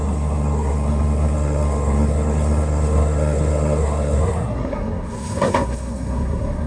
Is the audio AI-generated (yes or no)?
yes